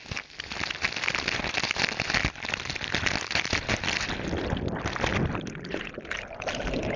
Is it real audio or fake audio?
real